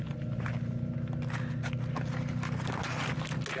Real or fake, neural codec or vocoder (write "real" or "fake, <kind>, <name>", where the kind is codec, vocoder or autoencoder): real